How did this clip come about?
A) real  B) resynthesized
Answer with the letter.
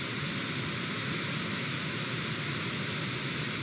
A